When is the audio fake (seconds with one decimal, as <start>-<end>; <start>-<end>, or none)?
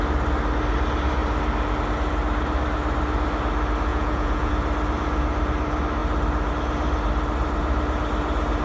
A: 3.9-4.5